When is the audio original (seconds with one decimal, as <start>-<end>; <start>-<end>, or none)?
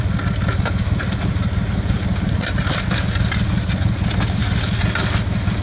0.0-5.6